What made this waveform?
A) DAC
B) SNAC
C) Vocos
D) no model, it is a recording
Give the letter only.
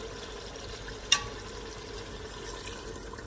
D